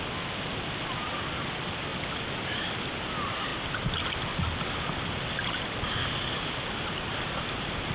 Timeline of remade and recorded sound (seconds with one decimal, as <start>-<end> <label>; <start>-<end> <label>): 0.0-7.9 recorded